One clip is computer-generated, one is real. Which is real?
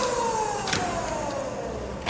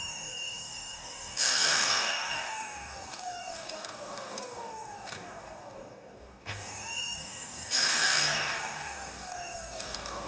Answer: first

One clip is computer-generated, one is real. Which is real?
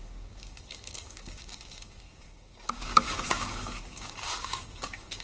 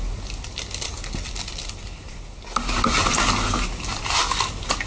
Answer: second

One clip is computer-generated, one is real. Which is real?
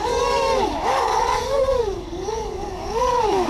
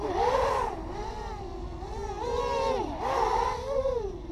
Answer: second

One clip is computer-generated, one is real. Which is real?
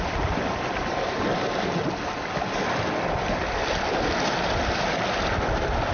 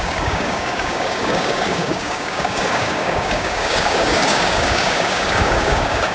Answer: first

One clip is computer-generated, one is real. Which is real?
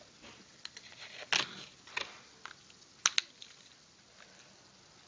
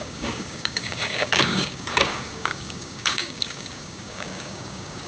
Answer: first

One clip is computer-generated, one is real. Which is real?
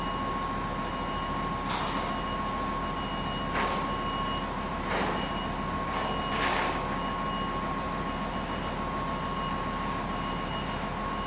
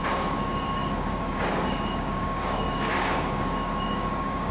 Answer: first